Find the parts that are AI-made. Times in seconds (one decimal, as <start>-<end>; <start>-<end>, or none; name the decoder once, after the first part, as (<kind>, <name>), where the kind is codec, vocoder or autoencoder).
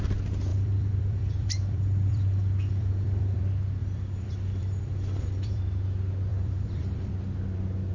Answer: 0.5-3.4 (vocoder, BigVGAN v2); 3.8-5.6; 6.3-7.1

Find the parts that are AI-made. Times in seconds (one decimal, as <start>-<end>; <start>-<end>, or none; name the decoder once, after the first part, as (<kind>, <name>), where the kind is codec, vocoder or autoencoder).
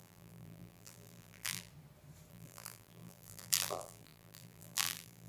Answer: 0.0-1.7 (vocoder, BigVGAN v2); 2.3-5.3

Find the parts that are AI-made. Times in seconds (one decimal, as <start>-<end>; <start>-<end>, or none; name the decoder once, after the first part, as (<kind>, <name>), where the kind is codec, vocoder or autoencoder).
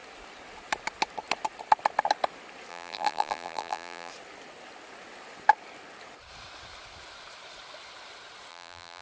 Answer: 2.7-4.1 (vocoder, BigVGAN v2); 8.5-9.0